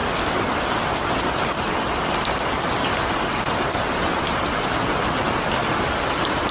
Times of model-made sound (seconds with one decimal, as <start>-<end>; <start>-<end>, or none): 5.6-6.5